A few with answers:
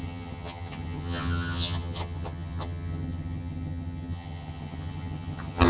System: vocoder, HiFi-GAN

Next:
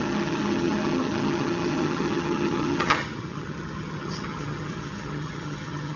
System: vocoder, HiFi-GAN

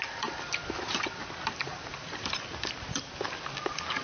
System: none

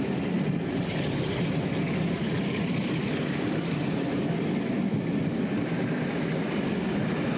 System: none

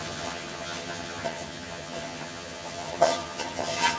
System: vocoder, HiFi-GAN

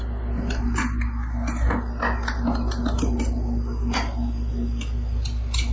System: none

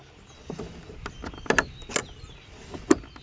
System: none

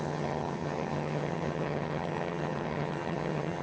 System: vocoder, HiFi-GAN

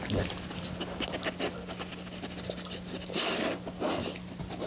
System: none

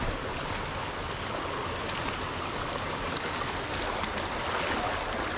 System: none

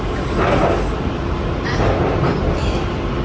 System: none